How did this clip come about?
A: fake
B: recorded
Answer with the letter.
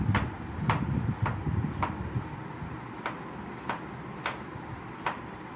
B